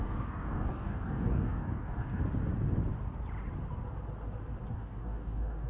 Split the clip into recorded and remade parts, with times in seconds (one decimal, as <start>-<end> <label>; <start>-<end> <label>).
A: 0.0-2.2 remade; 2.2-4.7 recorded; 4.7-5.7 remade